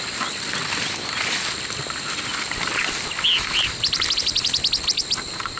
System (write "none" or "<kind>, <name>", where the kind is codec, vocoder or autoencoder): none